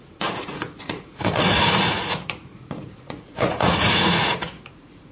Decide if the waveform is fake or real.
fake